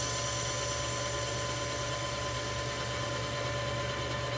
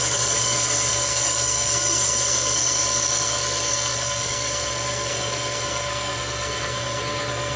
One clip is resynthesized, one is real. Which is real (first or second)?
first